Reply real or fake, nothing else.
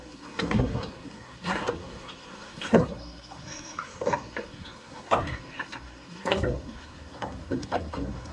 fake